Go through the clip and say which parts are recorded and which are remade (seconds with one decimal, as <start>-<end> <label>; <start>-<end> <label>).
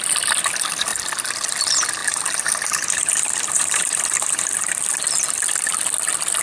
0.0-2.0 recorded; 2.0-4.9 remade; 4.9-6.4 recorded